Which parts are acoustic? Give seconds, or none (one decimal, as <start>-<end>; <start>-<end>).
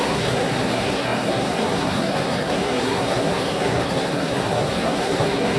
none